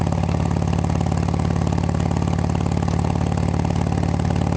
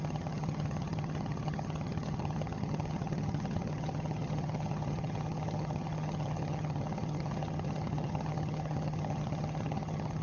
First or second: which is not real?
second